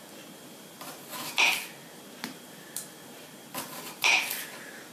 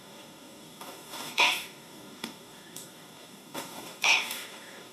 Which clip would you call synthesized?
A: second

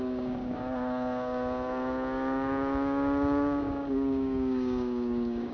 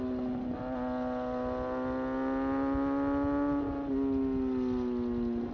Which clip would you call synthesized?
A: first